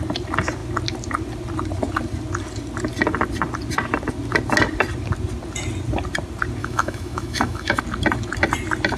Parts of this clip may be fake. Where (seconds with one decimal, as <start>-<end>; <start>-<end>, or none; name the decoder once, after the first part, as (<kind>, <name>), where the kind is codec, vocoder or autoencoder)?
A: 6.6-7.8 (autoencoder, DAC-VAE)